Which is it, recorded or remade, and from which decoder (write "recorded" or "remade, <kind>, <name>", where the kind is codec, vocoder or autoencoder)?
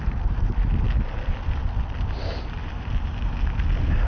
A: recorded